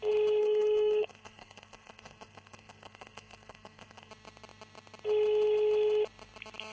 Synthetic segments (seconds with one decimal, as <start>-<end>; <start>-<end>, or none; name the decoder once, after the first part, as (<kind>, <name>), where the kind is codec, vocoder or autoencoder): 0.4-4.1 (codec, SNAC)